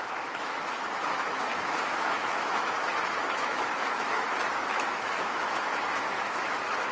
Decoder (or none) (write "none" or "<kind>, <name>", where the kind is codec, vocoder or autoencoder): autoencoder, DAC-VAE